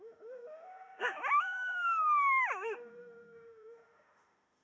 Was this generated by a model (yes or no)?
yes